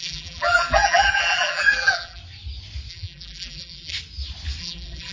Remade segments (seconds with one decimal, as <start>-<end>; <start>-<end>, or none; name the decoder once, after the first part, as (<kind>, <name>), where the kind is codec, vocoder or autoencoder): 0.0-2.2 (vocoder, BigVGAN v2); 2.9-3.9; 4.6-5.1